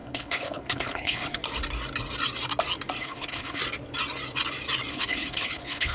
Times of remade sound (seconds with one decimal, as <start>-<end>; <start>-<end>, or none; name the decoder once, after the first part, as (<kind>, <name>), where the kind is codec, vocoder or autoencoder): 0.0-1.4 (codec, HILCodec); 3.0-3.6; 4.9-5.9